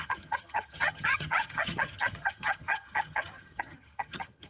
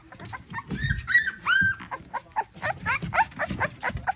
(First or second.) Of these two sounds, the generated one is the first